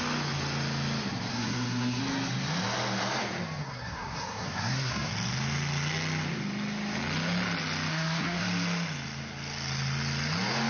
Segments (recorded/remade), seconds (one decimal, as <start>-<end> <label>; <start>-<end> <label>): 0.0-1.3 recorded; 1.3-2.0 remade; 2.0-3.6 recorded; 3.6-5.1 remade; 5.1-7.9 recorded; 7.9-8.4 remade; 8.4-10.7 recorded